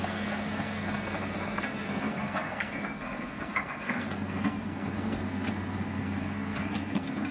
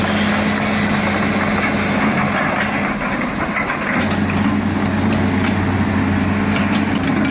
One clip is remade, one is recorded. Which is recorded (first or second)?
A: second